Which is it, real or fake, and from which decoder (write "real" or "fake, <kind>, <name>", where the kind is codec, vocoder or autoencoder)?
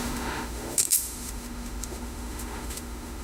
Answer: fake, autoencoder, DAC-VAE